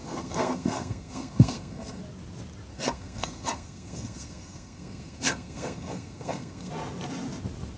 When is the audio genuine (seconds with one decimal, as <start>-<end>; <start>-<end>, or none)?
2.0-2.7; 6.7-7.8